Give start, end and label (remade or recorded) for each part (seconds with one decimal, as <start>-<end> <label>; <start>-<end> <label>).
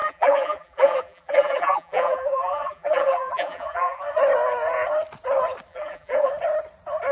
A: 0.0-4.0 remade; 4.0-5.7 recorded; 5.7-6.3 remade; 6.3-7.1 recorded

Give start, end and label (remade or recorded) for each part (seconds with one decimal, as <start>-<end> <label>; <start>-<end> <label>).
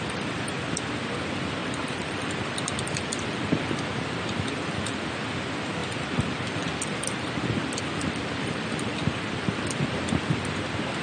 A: 0.0-1.6 recorded; 1.6-5.1 remade; 5.1-5.8 recorded; 5.8-10.1 remade; 10.1-11.0 recorded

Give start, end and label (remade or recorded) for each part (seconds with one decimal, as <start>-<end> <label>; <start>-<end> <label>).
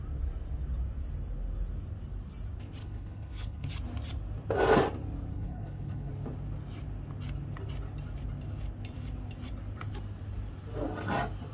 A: 0.0-2.8 recorded; 2.8-3.7 remade; 3.7-5.3 recorded; 5.3-6.1 remade; 6.1-11.5 recorded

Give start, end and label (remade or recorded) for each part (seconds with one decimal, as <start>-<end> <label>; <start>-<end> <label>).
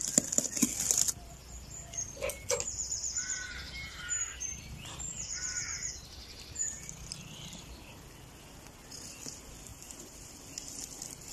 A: 0.0-9.7 recorded; 9.7-10.3 remade; 10.3-11.3 recorded